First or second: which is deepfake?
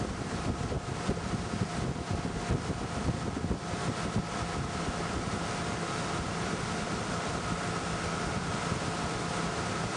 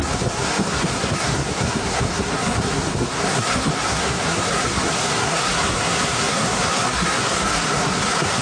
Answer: second